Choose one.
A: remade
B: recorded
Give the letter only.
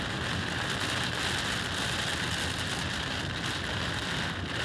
B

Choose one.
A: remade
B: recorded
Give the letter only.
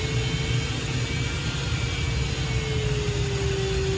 B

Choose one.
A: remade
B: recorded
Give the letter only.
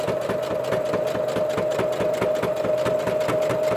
B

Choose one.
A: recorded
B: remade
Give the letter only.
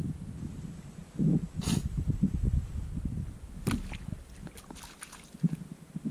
A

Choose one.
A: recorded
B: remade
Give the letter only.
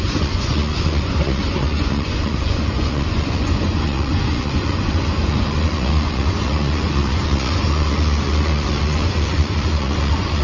B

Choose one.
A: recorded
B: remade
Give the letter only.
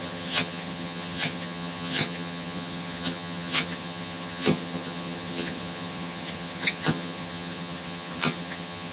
B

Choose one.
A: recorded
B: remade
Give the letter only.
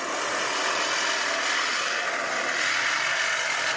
A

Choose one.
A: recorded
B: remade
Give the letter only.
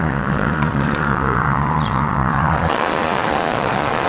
B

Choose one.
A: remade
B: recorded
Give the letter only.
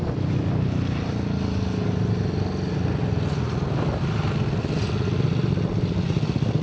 B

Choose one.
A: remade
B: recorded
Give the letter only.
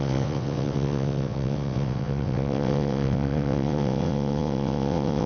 A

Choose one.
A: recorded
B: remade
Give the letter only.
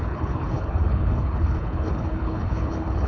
B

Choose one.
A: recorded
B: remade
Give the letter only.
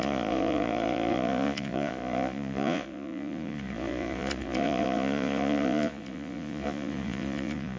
B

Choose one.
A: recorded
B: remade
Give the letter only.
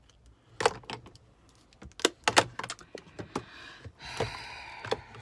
A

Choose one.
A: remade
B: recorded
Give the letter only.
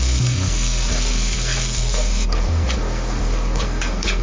A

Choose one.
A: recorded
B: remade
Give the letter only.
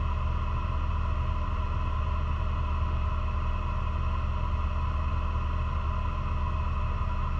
A